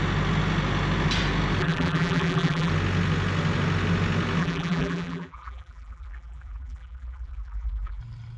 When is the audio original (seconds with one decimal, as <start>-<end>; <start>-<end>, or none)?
0.0-1.6; 2.7-4.4; 8.0-8.4